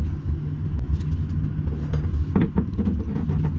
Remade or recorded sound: recorded